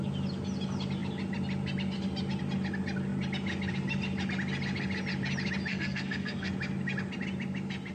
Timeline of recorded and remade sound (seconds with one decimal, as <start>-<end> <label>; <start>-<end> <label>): 0.0-5.7 recorded; 5.7-6.5 remade; 6.5-7.9 recorded